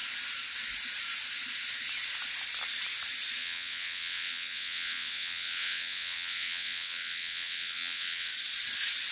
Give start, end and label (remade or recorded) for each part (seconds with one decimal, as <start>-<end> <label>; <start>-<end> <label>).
0.0-3.4 recorded; 3.4-8.3 remade; 8.3-9.1 recorded